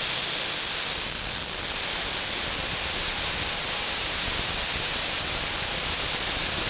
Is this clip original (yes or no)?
yes